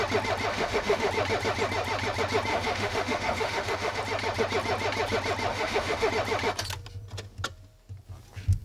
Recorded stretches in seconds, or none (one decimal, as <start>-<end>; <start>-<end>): 0.0-0.5; 1.1-2.5; 4.0-5.5; 6.1-8.6